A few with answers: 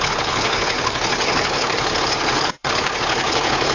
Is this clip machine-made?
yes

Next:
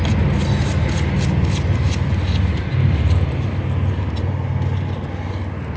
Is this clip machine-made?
no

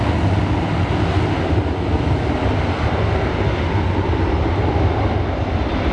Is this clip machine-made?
no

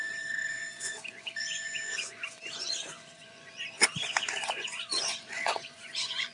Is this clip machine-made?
yes